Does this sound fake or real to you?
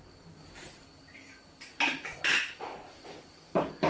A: real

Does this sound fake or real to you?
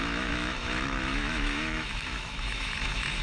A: fake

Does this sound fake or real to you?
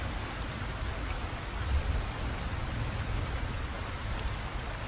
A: real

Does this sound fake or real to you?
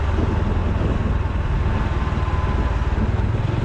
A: real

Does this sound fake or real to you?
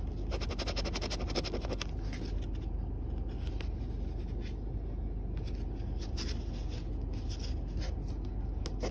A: real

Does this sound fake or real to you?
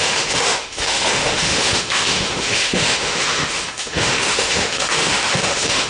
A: fake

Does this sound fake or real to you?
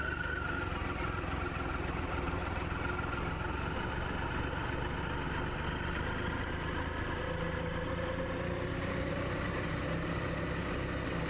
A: real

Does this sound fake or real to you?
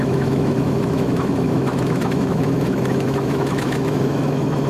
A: fake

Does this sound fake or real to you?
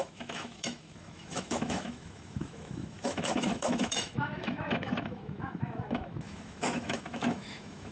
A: fake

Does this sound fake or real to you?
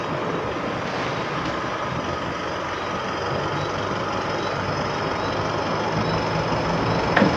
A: real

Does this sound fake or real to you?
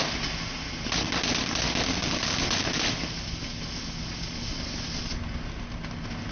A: real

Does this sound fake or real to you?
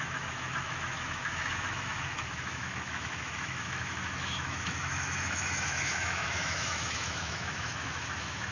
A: fake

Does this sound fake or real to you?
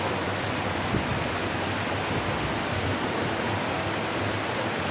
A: real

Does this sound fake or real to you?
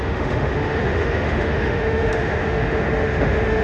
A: fake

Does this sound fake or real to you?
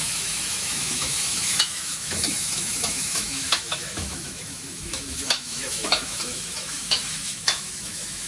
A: fake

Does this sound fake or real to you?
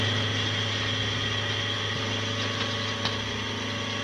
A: real